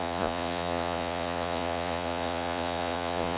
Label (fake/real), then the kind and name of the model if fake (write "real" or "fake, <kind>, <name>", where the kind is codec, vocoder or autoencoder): fake, vocoder, Vocos